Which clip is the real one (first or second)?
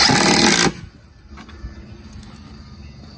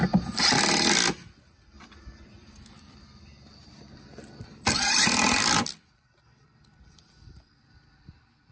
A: first